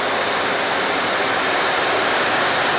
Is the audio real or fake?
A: real